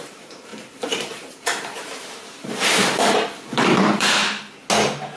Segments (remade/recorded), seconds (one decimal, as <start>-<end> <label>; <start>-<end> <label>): 0.0-4.2 remade; 4.2-5.2 recorded